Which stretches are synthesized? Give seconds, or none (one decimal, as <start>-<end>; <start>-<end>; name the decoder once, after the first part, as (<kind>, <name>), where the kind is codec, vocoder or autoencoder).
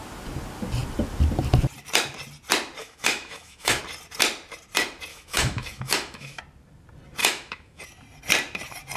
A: 2.8-3.8 (autoencoder, DAC-VAE); 5.1-6.4; 7.2-7.8